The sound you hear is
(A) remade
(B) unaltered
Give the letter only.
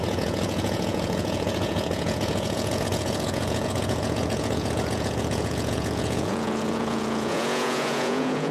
A